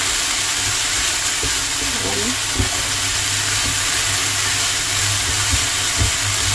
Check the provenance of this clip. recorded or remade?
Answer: recorded